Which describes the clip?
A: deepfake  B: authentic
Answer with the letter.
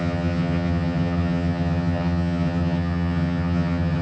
A